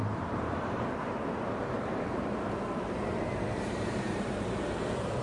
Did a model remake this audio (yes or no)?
yes